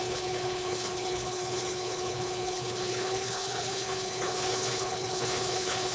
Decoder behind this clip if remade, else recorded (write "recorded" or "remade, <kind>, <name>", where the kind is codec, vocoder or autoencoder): remade, codec, HILCodec